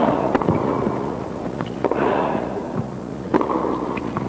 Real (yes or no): no